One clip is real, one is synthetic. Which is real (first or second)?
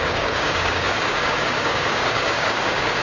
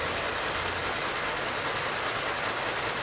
second